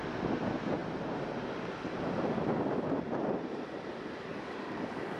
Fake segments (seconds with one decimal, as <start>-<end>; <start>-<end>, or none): 4.3-5.2